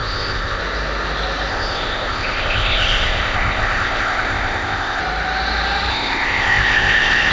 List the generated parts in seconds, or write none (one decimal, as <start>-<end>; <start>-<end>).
0.0-0.6; 1.5-5.0; 5.9-7.3